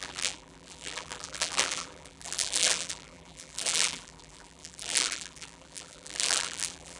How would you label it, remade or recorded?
remade